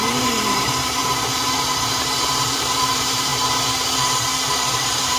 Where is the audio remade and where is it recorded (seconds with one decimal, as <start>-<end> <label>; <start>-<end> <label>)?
0.0-1.0 remade; 1.0-2.2 recorded; 2.2-3.3 remade; 3.3-4.5 recorded; 4.5-5.2 remade